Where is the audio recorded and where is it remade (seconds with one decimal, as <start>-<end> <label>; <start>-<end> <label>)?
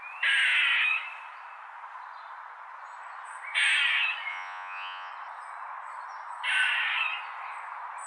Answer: 0.0-4.3 recorded; 4.3-5.1 remade; 5.1-8.1 recorded